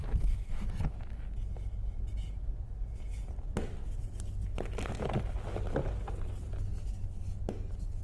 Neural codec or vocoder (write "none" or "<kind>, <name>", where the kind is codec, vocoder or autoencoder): none